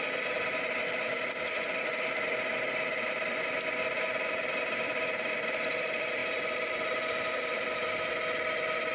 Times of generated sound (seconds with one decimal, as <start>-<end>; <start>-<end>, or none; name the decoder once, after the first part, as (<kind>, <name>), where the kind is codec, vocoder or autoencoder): 6.2-7.7 (vocoder, BigVGAN v2)